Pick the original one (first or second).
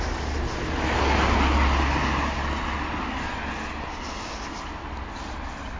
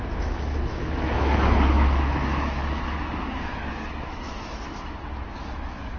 first